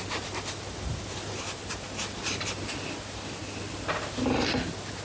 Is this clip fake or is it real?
real